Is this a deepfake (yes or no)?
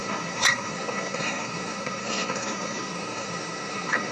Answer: yes